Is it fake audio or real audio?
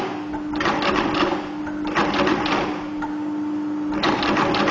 real